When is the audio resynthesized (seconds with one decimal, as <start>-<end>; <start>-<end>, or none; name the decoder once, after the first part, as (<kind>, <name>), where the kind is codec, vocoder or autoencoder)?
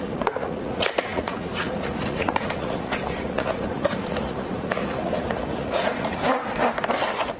0.0-6.2 (vocoder, Vocos)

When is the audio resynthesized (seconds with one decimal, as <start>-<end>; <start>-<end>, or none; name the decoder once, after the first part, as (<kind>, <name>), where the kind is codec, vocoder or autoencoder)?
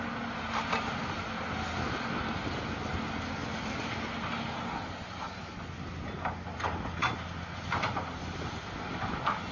none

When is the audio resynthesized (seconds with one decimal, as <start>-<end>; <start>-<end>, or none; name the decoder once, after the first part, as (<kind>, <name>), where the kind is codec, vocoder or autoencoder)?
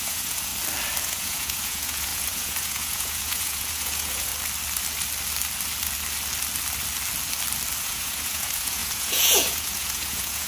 0.0-0.5 (vocoder, Vocos); 1.0-4.3; 7.8-10.5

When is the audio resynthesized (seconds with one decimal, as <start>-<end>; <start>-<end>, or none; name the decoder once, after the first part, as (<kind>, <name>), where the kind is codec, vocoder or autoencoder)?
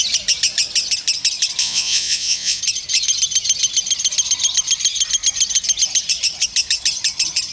1.6-2.6 (vocoder, Vocos)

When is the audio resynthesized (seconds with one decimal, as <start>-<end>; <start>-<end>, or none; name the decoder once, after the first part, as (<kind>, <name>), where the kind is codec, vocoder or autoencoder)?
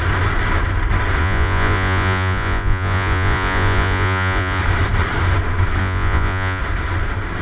1.2-4.6 (vocoder, Vocos); 5.8-6.6